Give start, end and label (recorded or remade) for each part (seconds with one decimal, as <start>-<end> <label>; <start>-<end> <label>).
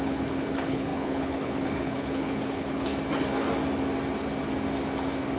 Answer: 0.0-2.9 remade; 2.9-5.4 recorded